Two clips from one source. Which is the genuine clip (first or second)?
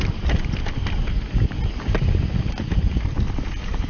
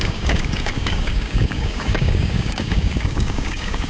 first